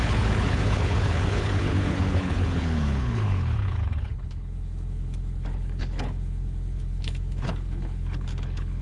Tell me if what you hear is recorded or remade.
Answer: remade